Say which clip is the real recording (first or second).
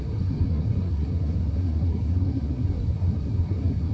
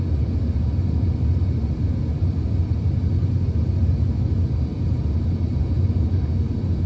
second